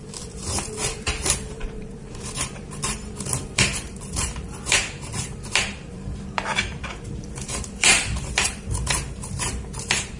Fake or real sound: fake